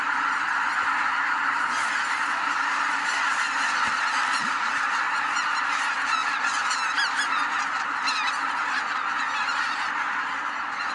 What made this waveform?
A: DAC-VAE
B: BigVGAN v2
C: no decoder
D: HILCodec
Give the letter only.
C